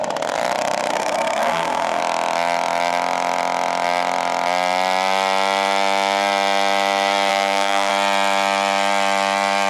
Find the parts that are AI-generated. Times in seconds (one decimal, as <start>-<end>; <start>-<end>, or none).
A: 0.9-2.0; 7.3-7.9